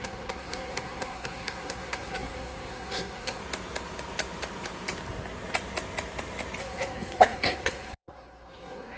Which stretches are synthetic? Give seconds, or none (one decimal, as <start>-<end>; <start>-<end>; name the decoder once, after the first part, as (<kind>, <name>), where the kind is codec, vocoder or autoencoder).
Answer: 0.0-3.4 (codec, SNAC); 6.6-9.0